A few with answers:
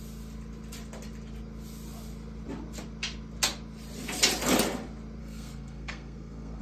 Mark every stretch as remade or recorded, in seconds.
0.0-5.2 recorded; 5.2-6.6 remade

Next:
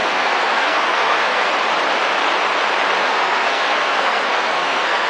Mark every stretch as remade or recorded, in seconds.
0.0-1.5 remade; 1.5-3.0 recorded; 3.0-5.1 remade

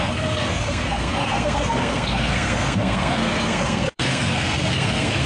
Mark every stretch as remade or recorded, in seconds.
0.0-5.3 remade

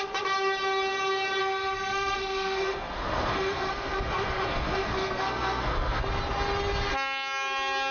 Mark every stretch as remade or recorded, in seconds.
0.0-1.4 recorded; 1.4-6.0 remade; 6.0-7.9 recorded

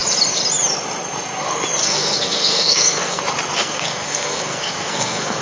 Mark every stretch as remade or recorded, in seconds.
0.0-1.8 recorded; 1.8-3.2 remade; 3.2-3.6 recorded; 3.6-5.4 remade

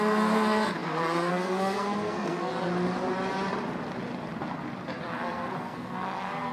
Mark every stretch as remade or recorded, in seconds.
0.0-2.5 remade; 2.5-5.1 recorded; 5.1-6.5 remade

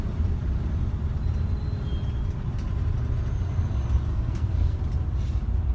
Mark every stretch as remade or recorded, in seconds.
0.0-4.1 recorded; 4.1-4.8 remade; 4.8-5.7 recorded